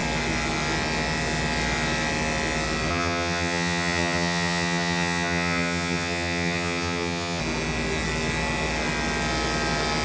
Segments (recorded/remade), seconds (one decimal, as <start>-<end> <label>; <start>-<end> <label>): 0.0-2.9 recorded; 2.9-7.4 remade; 7.4-10.0 recorded

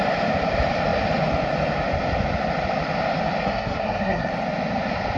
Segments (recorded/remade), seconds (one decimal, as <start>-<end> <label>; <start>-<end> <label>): 0.0-3.4 recorded; 3.4-4.3 remade; 4.3-5.2 recorded

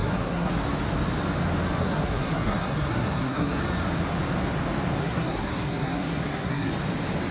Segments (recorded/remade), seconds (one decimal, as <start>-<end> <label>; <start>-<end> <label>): 0.0-0.5 remade; 0.5-1.8 recorded; 1.8-3.6 remade; 3.6-5.0 recorded; 5.0-6.7 remade; 6.7-7.3 recorded

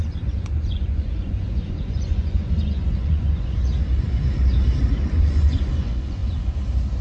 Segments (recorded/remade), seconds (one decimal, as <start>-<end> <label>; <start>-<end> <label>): 0.0-3.6 remade; 3.6-5.1 recorded; 5.1-6.2 remade; 6.2-7.0 recorded

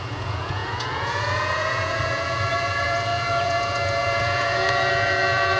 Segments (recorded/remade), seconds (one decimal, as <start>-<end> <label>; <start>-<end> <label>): 0.0-5.6 remade

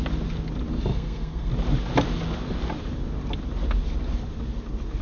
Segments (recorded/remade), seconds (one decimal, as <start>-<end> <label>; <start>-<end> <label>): 0.0-0.9 recorded; 0.9-1.5 remade; 1.5-5.0 recorded

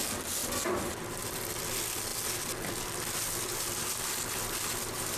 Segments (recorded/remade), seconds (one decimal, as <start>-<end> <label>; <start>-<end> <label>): 0.0-0.4 recorded; 0.4-1.6 remade; 1.6-5.2 recorded

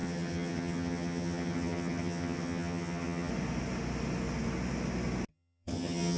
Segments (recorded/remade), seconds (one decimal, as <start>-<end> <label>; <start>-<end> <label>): 0.0-3.3 remade; 3.3-5.3 recorded; 5.3-6.2 remade